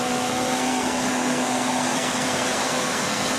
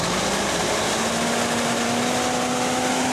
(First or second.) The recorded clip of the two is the second